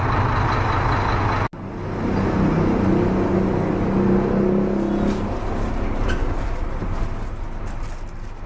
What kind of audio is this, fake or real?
real